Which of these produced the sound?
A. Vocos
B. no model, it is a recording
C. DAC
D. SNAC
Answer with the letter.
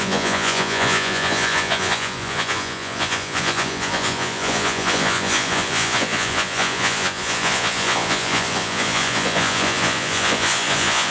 A